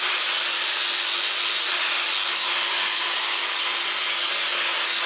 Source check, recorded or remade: recorded